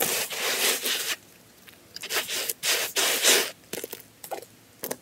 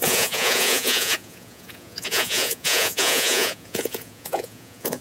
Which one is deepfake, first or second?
second